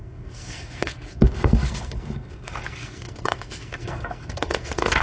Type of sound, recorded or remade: remade